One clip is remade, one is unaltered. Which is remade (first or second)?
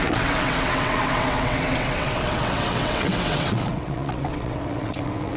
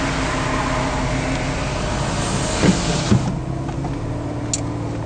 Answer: first